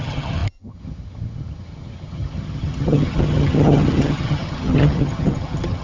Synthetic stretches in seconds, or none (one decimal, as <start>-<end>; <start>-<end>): 0.0-5.8